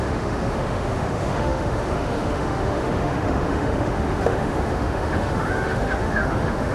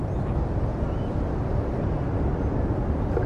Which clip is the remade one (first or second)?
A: first